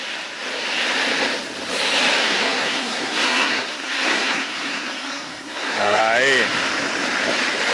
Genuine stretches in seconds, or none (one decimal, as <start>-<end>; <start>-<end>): 0.0-2.2; 6.0-7.7